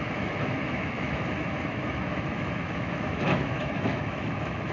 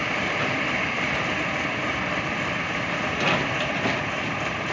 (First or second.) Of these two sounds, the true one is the second